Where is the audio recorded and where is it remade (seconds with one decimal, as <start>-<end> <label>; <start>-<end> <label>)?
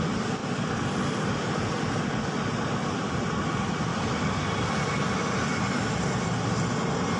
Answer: 0.0-7.2 recorded